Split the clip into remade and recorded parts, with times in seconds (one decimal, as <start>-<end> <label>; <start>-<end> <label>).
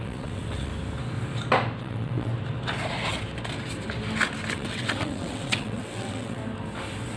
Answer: 0.0-0.7 remade; 0.7-1.8 recorded; 1.8-2.3 remade; 2.3-4.5 recorded; 4.5-6.4 remade; 6.4-7.2 recorded